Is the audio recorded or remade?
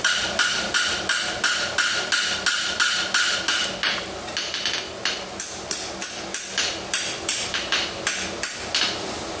recorded